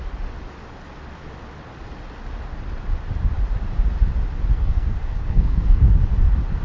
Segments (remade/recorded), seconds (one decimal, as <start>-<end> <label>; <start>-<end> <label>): 0.0-4.5 recorded; 4.5-6.0 remade; 6.0-6.6 recorded